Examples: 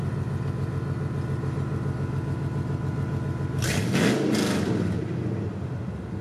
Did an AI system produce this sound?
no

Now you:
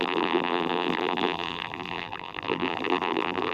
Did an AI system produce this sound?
yes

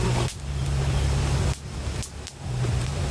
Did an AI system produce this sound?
no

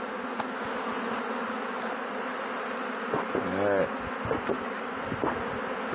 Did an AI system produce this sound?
no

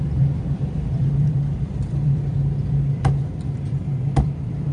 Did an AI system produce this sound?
yes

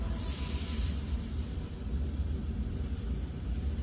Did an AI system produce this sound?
yes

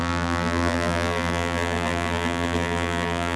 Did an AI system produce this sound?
yes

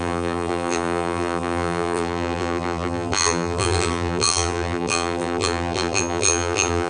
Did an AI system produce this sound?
yes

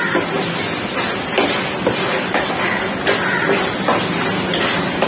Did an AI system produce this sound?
no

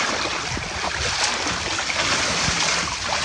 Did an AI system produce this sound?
no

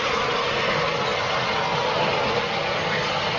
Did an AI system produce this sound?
no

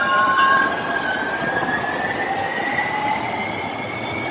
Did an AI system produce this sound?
yes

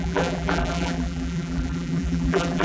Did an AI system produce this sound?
yes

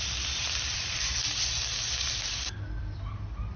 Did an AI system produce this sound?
yes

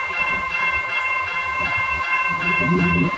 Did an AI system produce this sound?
yes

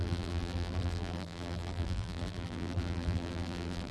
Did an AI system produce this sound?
yes